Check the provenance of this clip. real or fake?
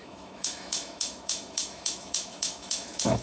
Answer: fake